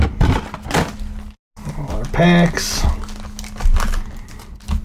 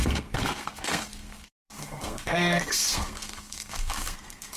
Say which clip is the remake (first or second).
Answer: second